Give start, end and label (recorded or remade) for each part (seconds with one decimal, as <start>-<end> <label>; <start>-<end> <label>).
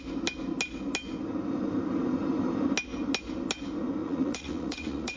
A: 0.0-4.0 recorded; 4.0-5.2 remade